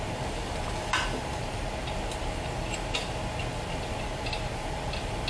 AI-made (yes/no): no